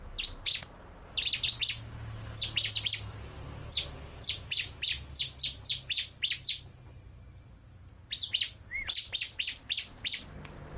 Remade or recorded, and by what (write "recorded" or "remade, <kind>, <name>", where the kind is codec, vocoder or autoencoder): recorded